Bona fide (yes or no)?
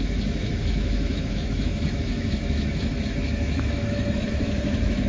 no